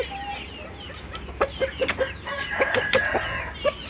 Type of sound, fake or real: real